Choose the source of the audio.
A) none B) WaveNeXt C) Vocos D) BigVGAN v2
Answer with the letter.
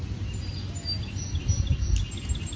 A